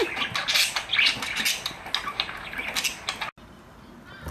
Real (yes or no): yes